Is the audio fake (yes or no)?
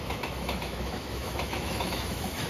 yes